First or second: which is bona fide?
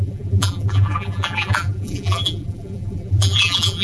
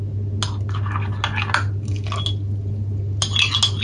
second